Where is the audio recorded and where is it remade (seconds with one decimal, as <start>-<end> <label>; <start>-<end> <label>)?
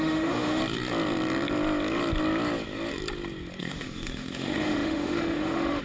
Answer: 0.0-0.6 remade; 0.6-3.6 recorded; 3.6-5.8 remade